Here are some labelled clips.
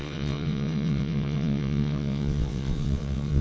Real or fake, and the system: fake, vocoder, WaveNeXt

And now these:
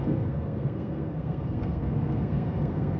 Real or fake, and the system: fake, codec, SNAC